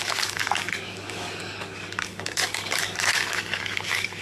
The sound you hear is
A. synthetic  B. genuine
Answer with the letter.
A